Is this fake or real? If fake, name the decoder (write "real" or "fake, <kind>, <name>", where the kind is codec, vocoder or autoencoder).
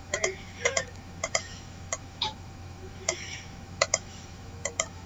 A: fake, autoencoder, DAC-VAE